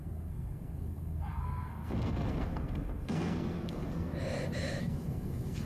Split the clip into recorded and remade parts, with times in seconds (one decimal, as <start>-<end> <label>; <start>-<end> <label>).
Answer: 0.0-4.1 remade; 4.1-4.8 recorded; 4.8-5.7 remade